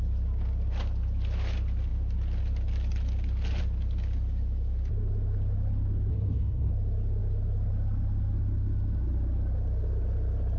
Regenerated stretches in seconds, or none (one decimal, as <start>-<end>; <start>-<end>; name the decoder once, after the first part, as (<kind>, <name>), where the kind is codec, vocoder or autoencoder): 6.1-6.7 (codec, SNAC)